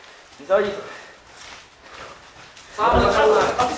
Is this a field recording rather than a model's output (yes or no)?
yes